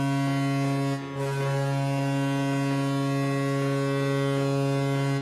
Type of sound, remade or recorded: recorded